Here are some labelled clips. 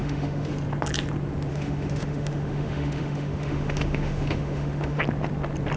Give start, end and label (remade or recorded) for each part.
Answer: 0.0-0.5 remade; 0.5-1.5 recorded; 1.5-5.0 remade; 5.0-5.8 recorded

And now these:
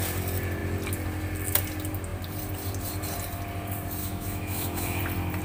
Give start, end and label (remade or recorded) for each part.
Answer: 0.0-4.0 recorded; 4.0-5.0 remade; 5.0-5.4 recorded

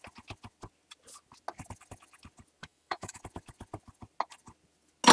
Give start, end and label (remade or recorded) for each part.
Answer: 0.0-2.6 recorded; 2.6-3.2 remade; 3.2-5.1 recorded

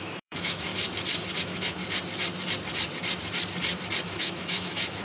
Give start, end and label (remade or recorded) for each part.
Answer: 0.0-0.7 remade; 0.7-1.4 recorded; 1.4-1.8 remade; 1.8-4.0 recorded; 4.0-5.0 remade

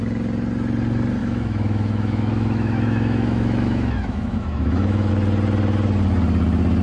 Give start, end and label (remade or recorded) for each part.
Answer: 0.0-1.2 recorded; 1.2-5.1 remade; 5.1-6.8 recorded

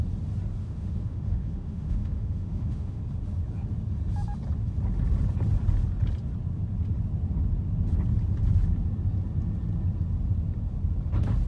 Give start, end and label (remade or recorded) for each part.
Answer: 0.0-0.6 recorded; 0.6-3.0 remade; 3.0-11.5 recorded

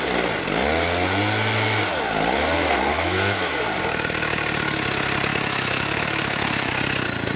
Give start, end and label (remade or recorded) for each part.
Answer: 0.0-2.9 recorded; 2.9-3.6 remade; 3.6-5.3 recorded; 5.3-6.7 remade; 6.7-7.4 recorded

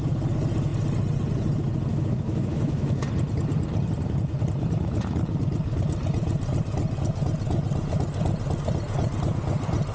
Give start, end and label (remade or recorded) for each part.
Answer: 0.0-1.9 recorded; 1.9-3.0 remade; 3.0-9.9 recorded